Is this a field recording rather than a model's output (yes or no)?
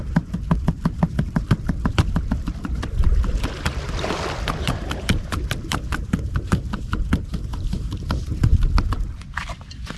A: no